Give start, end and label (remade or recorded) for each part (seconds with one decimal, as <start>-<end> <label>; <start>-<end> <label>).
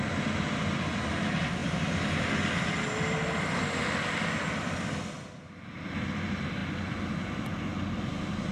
0.0-8.5 recorded